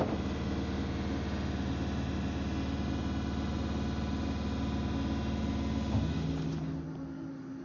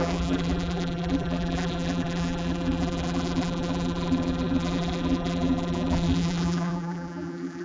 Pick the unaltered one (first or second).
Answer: first